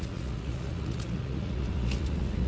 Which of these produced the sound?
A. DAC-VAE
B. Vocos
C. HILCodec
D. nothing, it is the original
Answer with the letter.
B